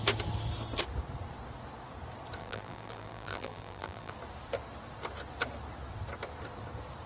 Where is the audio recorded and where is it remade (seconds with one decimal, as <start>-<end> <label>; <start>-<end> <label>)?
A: 0.0-2.4 recorded; 2.4-4.1 remade; 4.1-7.1 recorded